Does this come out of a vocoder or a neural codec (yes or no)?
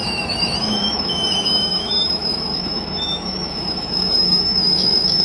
yes